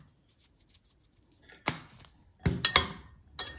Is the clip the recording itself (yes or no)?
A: yes